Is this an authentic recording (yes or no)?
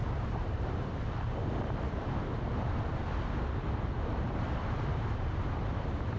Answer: no